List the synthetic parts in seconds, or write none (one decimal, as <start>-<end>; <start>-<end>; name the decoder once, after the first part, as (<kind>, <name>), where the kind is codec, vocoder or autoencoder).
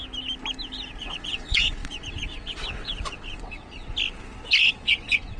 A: 1.0-3.8 (vocoder, WaveNeXt); 4.6-5.4